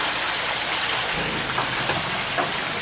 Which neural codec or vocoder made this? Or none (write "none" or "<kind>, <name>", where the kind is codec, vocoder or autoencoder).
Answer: none